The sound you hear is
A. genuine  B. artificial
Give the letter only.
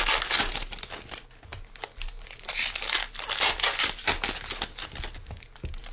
A